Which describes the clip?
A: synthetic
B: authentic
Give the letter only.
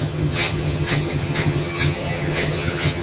A